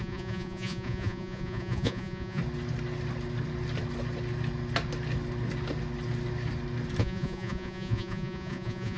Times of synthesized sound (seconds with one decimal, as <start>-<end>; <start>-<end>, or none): 0.0-2.4; 7.0-9.0